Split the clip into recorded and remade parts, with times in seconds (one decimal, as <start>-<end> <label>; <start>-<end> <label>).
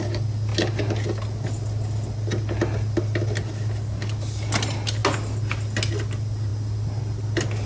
0.0-7.7 recorded